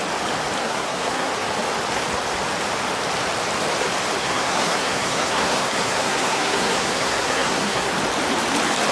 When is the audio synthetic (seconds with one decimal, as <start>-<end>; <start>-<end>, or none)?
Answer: 0.6-1.3; 4.2-7.9